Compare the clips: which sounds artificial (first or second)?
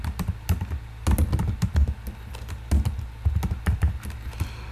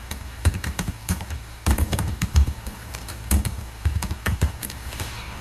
second